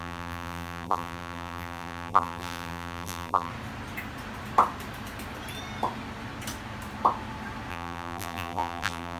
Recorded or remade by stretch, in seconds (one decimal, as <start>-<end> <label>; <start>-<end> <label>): 0.0-3.5 remade; 3.5-7.7 recorded; 7.7-9.2 remade